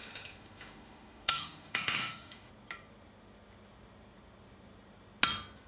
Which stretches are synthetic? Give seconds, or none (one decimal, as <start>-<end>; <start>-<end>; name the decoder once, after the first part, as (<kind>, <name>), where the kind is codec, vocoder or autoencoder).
0.0-2.5 (autoencoder, DAC-VAE)